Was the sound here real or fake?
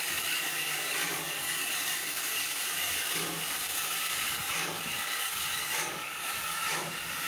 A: fake